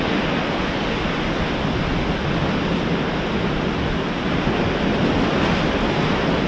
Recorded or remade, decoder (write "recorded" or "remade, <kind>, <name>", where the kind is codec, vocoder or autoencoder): recorded